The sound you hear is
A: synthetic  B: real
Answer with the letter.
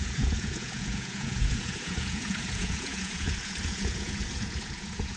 A